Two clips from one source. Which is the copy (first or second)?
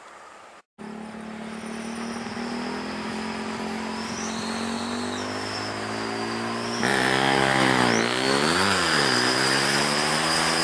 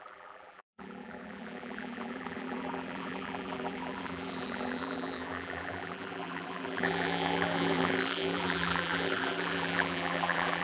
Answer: second